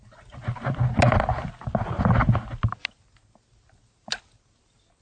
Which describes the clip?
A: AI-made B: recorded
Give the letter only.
B